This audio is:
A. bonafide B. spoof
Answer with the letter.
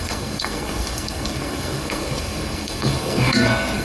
B